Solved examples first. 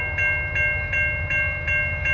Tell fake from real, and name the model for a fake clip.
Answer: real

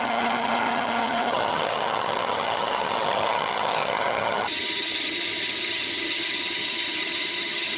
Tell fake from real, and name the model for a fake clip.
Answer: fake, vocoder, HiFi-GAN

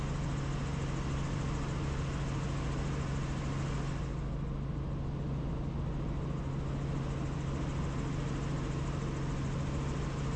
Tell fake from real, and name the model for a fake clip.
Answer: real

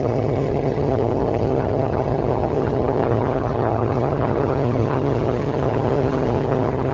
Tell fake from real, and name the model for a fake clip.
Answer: fake, vocoder, HiFi-GAN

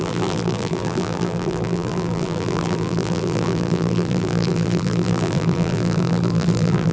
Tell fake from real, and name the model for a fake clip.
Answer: fake, vocoder, BigVGAN v2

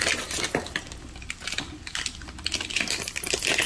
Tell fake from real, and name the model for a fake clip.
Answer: real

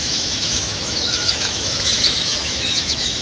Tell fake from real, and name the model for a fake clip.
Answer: fake, autoencoder, DAC-VAE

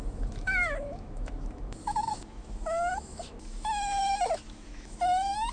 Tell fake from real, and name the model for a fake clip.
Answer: fake, autoencoder, DAC-VAE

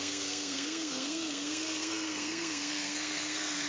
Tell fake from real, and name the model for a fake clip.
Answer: fake, codec, SNAC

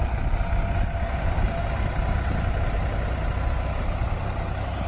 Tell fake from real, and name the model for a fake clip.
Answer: real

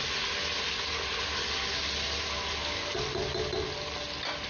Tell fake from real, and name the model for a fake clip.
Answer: real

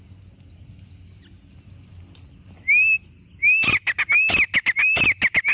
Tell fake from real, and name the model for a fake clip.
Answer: real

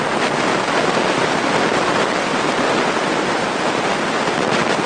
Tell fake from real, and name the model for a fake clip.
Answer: real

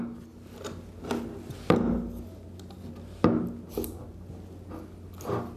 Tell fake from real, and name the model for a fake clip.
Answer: real